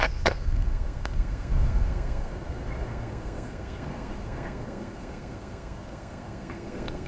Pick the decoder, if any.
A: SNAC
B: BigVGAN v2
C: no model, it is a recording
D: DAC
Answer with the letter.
A